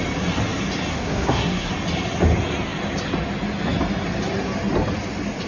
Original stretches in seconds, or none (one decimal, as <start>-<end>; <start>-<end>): 0.0-0.9; 1.7-5.5